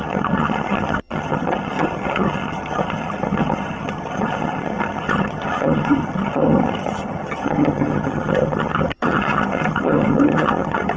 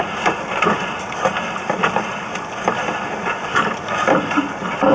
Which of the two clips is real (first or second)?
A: second